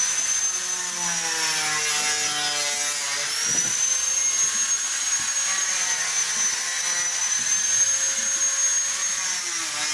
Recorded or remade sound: recorded